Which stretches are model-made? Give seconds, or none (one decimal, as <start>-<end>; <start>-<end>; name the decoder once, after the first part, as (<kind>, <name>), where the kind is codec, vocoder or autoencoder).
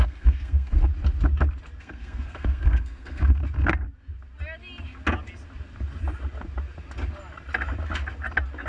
0.0-0.9 (codec, SNAC); 1.8-3.4